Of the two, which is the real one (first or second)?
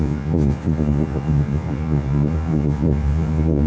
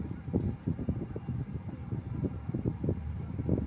second